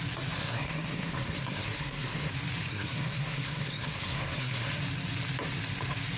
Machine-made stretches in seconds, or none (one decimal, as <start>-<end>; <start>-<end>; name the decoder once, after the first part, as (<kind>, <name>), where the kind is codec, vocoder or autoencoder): 0.4-2.3 (codec, SNAC); 2.7-4.7